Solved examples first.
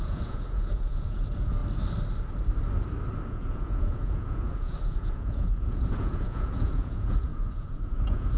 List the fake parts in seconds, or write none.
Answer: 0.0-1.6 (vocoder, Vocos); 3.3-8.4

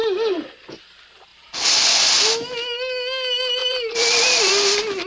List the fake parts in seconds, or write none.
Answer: 1.3-1.9 (vocoder, BigVGAN v2); 3.6-4.5

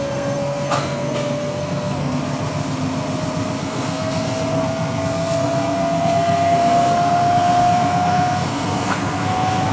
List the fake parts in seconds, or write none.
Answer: 0.0-2.2 (codec, SNAC); 3.6-9.7

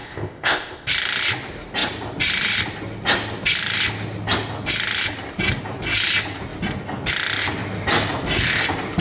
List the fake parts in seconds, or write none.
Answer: 0.0-0.9 (codec, ZipCodec)

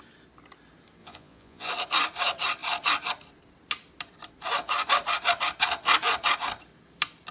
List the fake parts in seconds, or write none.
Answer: 1.0-1.7 (vocoder, Vocos)

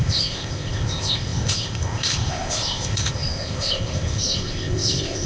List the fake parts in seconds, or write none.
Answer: 0.0-5.3 (codec, ZipCodec)